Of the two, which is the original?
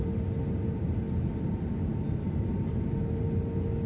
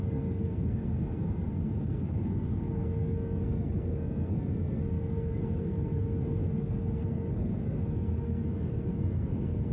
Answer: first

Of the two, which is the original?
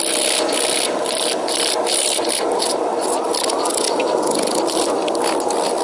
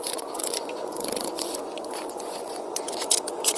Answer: first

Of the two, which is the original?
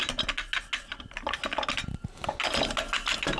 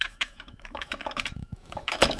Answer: first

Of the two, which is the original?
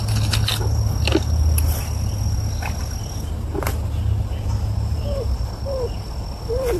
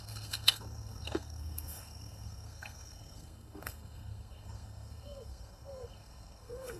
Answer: first